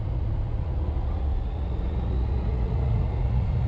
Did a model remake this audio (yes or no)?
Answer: yes